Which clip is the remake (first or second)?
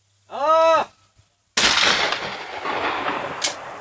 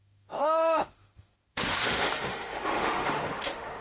second